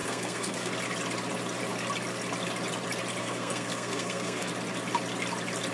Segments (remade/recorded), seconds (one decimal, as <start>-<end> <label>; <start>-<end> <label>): 0.0-0.7 remade; 0.7-3.2 recorded; 3.2-4.5 remade; 4.5-5.7 recorded